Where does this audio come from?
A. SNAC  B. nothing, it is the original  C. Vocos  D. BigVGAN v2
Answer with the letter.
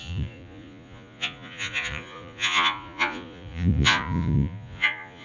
C